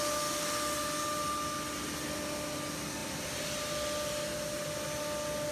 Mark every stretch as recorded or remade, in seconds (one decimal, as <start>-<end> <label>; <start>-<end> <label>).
0.0-5.5 recorded